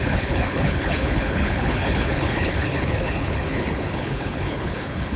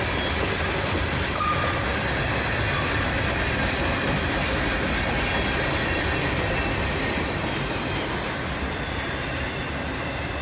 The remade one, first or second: first